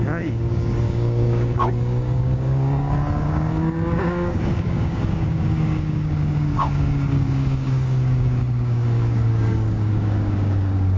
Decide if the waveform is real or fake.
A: fake